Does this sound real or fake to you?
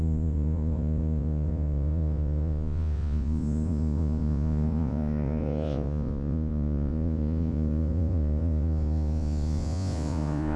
fake